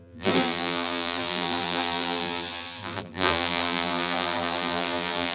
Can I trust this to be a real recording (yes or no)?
no